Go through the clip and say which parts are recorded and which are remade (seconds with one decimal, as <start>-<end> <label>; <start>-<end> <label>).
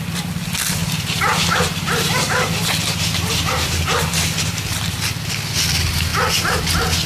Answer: 0.0-0.8 recorded; 0.8-3.7 remade; 3.7-7.1 recorded